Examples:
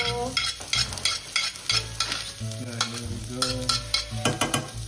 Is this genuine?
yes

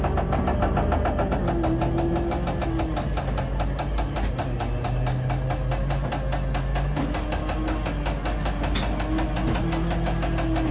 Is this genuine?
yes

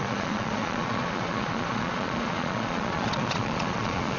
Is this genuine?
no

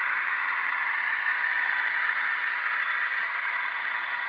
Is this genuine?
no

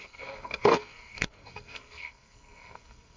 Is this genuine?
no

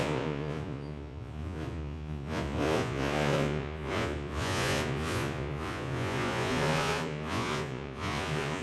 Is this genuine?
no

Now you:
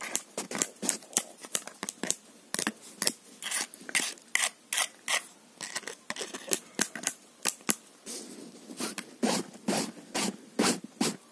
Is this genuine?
yes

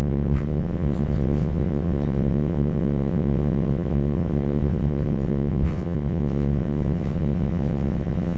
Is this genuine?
no